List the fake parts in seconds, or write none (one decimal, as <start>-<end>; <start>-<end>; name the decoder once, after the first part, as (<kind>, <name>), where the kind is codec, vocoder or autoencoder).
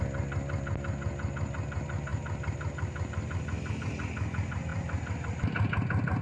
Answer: none